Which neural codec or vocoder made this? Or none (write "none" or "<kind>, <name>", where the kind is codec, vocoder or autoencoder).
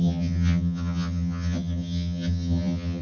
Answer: vocoder, HiFi-GAN